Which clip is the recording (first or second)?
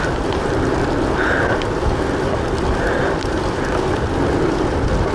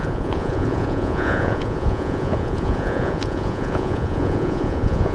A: first